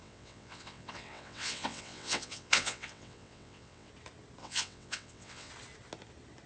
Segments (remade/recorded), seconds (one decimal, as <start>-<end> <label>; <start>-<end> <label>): 0.0-3.9 remade; 3.9-4.4 recorded; 4.4-5.5 remade; 5.5-6.5 recorded